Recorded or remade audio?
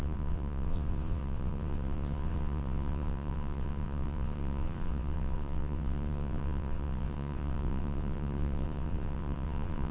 remade